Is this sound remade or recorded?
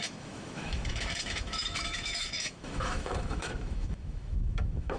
remade